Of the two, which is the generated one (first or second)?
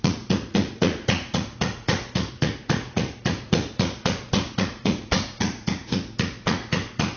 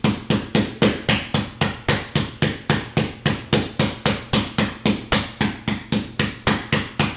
first